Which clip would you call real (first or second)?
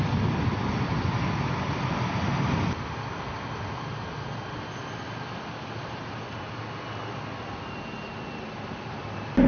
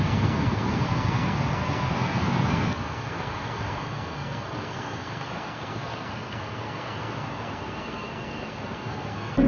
first